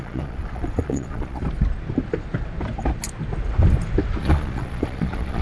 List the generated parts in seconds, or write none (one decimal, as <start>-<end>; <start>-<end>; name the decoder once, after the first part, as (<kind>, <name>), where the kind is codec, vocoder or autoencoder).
0.0-1.4 (vocoder, Vocos); 4.2-5.4